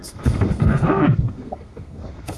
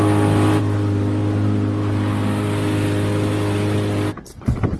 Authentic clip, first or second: second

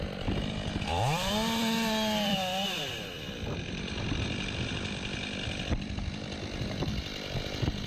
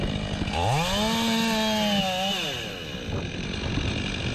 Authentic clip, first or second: second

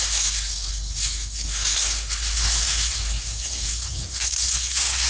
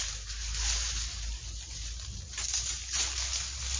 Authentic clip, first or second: second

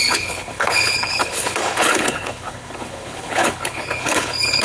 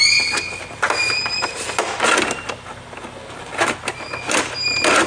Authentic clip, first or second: second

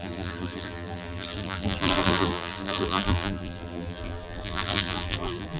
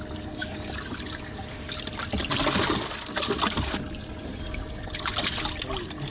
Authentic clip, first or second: second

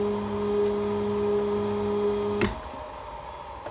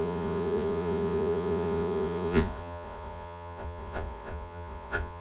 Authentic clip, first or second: first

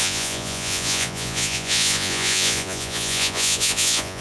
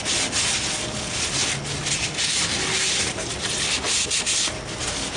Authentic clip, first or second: second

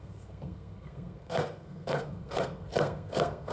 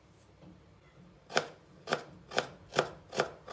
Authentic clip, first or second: second